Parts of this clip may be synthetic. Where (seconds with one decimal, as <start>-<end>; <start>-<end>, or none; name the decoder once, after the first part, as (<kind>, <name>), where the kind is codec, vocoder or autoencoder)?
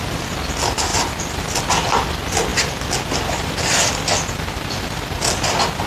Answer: none